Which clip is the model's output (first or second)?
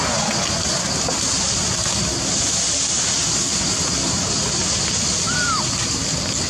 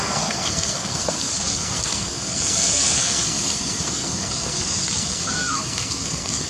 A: second